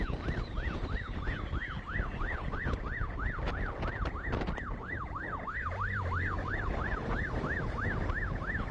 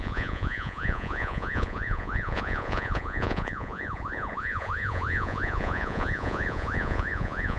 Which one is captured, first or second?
first